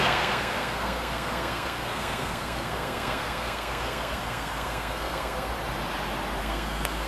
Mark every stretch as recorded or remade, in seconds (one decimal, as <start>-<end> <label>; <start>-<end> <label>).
0.0-5.5 remade; 5.5-6.4 recorded; 6.4-7.1 remade